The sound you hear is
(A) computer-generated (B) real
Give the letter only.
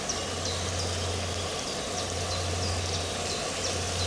B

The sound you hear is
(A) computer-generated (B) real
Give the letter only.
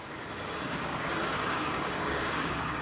A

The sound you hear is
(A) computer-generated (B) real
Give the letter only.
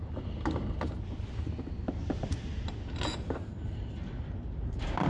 B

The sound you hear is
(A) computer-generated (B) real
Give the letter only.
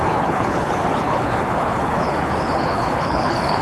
A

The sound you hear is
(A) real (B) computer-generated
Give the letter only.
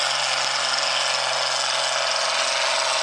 A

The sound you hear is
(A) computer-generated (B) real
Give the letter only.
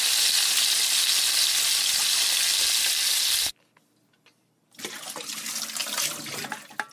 B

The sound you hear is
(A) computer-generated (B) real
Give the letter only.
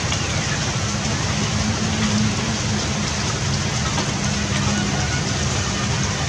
B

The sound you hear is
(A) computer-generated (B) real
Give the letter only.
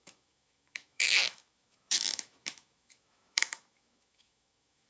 A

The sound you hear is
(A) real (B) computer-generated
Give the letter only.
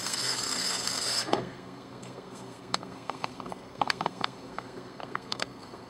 B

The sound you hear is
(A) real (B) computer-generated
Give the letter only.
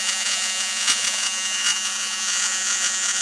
B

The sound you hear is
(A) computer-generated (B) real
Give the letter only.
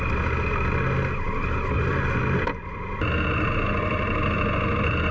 B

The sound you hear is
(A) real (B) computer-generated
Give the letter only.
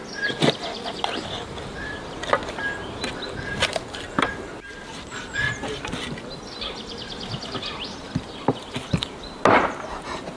A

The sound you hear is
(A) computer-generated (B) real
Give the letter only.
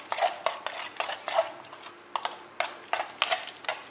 B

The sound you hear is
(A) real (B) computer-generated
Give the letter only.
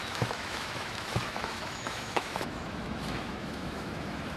B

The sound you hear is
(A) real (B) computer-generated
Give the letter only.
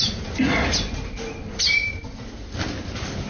A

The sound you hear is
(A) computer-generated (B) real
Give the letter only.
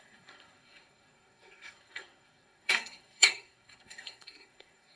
A